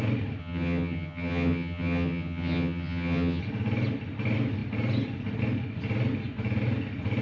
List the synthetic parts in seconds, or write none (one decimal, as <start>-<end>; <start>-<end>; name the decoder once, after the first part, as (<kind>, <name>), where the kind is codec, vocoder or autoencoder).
0.4-3.4 (vocoder, HiFi-GAN)